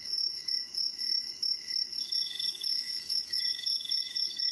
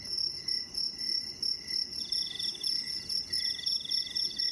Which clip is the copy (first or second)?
first